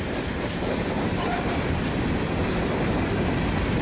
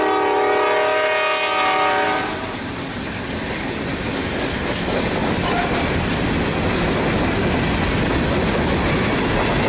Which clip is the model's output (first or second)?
first